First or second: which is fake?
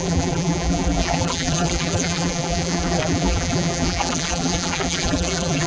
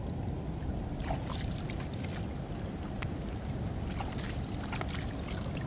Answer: first